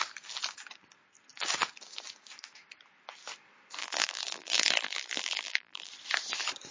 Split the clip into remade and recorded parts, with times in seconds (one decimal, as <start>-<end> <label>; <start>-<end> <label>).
0.0-3.8 recorded; 3.8-5.9 remade; 5.9-6.7 recorded